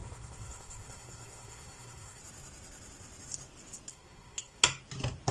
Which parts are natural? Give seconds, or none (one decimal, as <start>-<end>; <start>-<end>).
2.2-3.9; 4.6-5.3

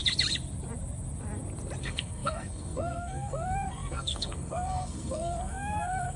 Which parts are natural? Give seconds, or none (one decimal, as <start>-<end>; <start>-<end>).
0.0-1.8

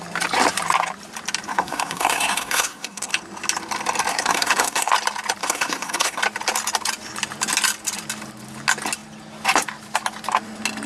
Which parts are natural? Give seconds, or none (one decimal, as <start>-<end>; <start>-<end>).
0.0-1.5; 3.1-4.1; 4.9-5.4; 6.2-10.9

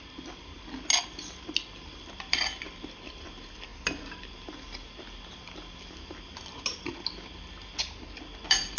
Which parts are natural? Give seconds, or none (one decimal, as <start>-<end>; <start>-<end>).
0.0-8.8

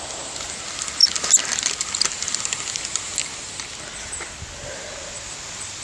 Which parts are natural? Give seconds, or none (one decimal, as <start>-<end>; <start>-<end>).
0.0-5.8

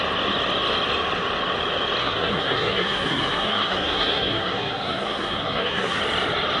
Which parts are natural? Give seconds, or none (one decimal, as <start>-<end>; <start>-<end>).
0.0-2.0; 6.0-6.6